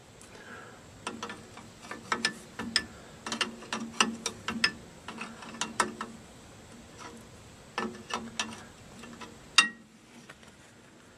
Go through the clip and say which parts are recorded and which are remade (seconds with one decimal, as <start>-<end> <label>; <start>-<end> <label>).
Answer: 0.0-11.2 recorded